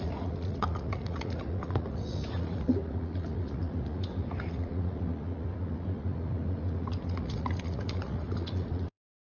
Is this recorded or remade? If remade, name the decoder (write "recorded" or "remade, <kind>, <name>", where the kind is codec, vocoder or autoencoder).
remade, vocoder, Vocos